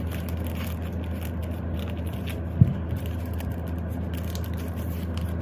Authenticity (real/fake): real